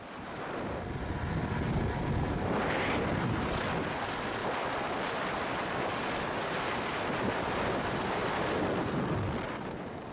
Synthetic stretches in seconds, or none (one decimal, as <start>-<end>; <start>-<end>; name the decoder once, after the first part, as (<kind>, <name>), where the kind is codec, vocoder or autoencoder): 4.4-6.2 (vocoder, BigVGAN v2)